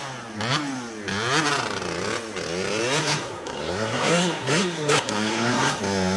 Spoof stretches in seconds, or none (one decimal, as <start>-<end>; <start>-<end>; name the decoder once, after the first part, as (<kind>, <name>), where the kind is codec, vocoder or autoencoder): 3.0-5.8 (codec, SNAC)